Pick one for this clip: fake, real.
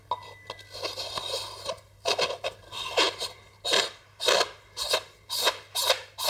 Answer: real